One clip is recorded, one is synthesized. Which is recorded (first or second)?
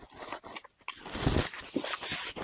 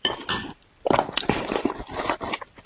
first